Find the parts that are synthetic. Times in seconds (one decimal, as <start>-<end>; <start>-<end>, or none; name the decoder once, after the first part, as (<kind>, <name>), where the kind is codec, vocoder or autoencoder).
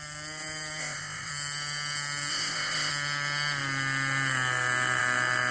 0.8-1.3 (codec, ZipCodec); 2.3-2.9